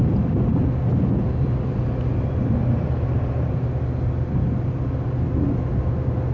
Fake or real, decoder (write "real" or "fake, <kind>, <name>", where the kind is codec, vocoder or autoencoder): real